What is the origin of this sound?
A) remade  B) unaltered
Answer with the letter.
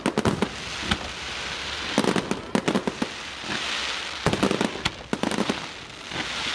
B